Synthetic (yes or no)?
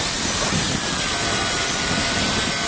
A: no